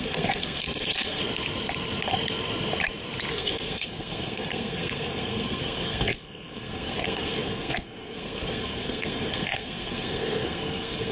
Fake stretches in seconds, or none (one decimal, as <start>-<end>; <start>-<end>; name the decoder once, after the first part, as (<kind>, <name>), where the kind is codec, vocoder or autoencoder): 0.0-1.2 (codec, SNAC); 3.3-11.1